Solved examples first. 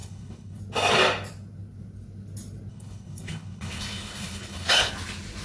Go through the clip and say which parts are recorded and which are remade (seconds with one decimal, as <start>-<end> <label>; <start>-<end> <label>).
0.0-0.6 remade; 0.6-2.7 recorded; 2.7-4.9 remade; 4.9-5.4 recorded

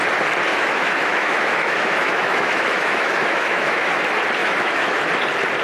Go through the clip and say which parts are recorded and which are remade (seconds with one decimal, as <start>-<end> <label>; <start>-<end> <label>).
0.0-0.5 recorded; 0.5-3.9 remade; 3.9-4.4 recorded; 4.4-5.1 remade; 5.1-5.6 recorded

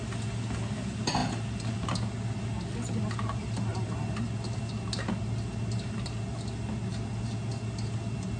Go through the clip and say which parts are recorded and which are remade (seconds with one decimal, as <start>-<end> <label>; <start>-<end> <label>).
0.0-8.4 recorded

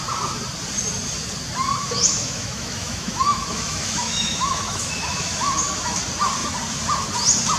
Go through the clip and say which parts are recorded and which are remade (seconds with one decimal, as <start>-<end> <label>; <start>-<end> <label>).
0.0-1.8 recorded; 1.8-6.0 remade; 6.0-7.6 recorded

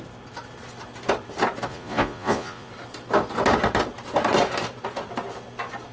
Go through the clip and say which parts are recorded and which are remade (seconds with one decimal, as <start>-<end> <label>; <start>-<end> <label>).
0.0-1.7 recorded; 1.7-2.7 remade; 2.7-5.9 recorded